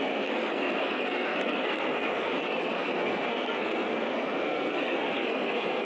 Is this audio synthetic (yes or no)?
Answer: yes